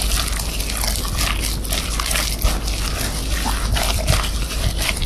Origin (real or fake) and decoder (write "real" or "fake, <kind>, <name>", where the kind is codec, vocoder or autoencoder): real